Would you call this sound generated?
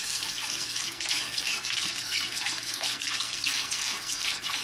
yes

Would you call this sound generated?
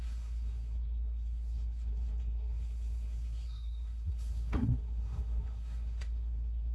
yes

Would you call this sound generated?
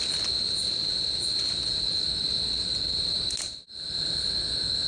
no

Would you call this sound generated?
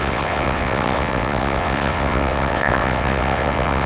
yes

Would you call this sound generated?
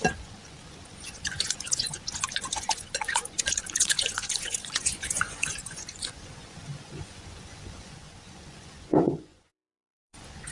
yes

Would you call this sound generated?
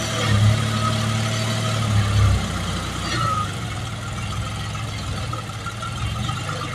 no